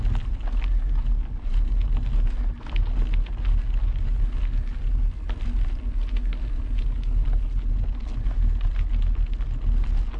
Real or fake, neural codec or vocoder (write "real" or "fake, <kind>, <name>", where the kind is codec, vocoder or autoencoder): real